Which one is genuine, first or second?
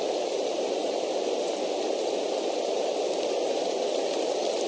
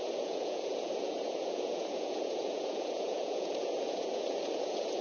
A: first